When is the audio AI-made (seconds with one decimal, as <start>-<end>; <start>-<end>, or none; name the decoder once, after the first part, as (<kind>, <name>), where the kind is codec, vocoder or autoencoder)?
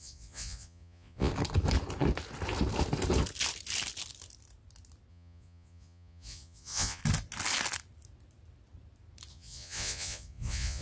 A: 0.0-1.3 (vocoder, Vocos); 5.1-7.0; 9.3-10.8